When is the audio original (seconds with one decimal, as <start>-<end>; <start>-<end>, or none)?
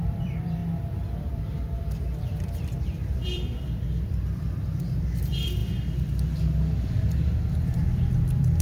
0.6-1.2; 5.6-7.0